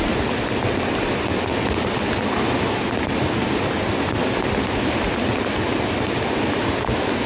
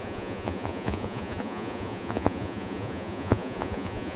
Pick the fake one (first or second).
second